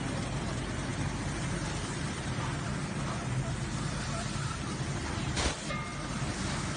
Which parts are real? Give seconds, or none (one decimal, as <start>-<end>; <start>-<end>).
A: 0.0-6.8